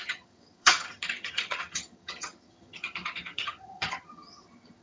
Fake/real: fake